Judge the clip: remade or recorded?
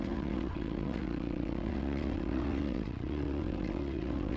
remade